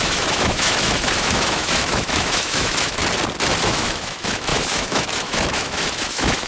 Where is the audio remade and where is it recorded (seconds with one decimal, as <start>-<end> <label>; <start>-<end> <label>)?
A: 0.0-3.0 remade; 3.0-3.6 recorded; 3.6-6.5 remade